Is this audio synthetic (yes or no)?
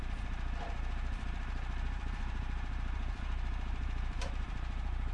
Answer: yes